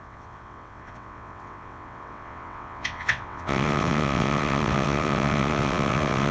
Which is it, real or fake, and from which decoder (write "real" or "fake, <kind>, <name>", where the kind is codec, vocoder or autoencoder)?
fake, vocoder, WaveNeXt